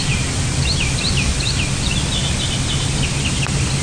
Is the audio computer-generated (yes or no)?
no